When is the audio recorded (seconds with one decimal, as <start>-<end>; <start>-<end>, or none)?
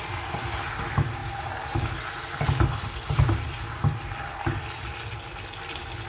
0.0-6.1